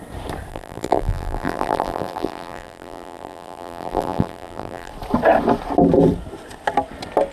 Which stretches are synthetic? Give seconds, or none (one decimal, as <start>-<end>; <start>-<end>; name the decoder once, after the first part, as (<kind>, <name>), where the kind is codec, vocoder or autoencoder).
0.5-4.9 (vocoder, BigVGAN v2)